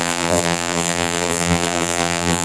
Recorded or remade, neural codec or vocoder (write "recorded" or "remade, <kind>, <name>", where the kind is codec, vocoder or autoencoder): remade, vocoder, BigVGAN v2